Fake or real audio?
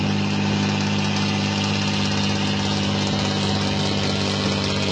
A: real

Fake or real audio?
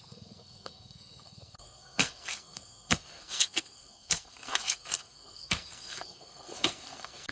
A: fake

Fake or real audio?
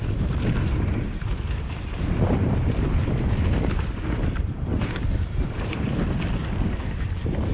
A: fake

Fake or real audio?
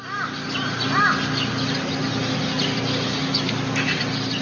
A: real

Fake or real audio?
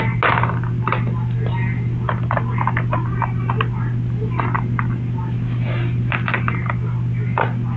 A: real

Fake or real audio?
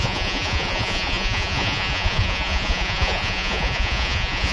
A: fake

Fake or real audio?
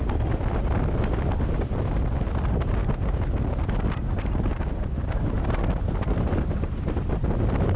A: real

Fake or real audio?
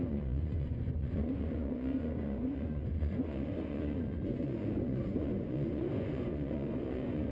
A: fake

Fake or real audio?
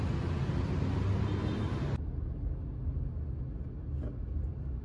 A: real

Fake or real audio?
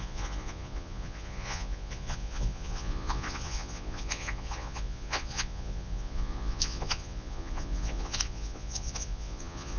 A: fake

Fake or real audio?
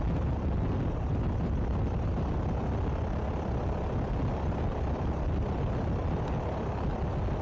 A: real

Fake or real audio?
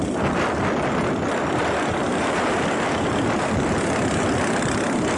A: real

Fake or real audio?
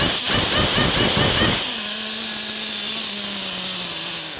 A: real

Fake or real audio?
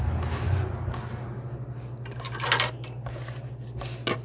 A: real